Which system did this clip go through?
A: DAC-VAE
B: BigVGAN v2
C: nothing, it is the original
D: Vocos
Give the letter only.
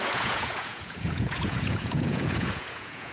D